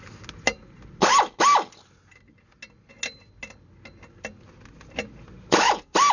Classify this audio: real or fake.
real